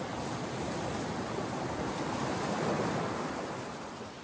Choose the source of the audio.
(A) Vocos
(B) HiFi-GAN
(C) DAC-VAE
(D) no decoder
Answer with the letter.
D